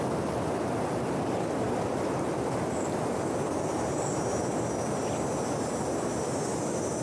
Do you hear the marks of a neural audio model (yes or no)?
no